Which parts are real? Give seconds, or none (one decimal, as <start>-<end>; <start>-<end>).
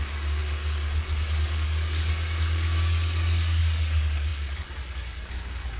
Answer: none